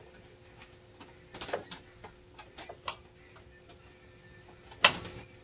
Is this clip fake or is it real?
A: real